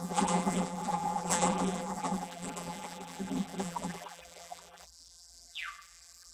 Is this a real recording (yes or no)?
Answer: no